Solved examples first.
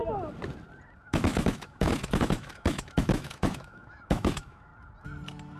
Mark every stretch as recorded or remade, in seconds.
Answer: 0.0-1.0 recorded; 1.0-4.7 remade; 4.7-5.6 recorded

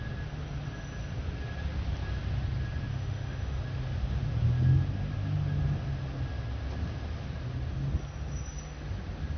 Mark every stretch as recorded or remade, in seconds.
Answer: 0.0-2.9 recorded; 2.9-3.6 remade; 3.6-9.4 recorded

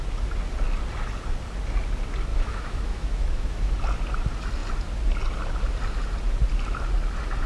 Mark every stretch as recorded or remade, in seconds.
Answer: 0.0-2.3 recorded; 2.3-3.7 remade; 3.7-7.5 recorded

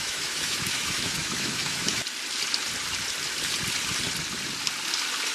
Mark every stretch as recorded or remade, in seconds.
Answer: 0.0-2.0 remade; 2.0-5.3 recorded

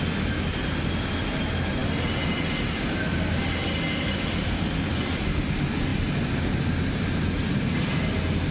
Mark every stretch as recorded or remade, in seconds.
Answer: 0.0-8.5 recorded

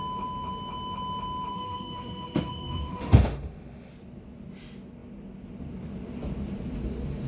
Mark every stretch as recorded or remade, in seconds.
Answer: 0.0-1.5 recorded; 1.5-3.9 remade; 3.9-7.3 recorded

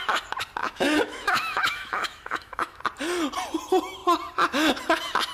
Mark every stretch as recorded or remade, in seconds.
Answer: 0.0-0.6 recorded; 0.6-2.8 remade; 2.8-5.3 recorded

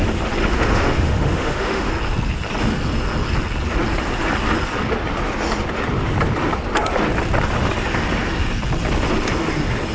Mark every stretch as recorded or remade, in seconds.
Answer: 0.0-0.4 recorded; 0.4-1.9 remade; 1.9-9.9 recorded